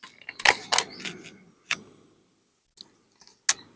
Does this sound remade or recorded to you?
recorded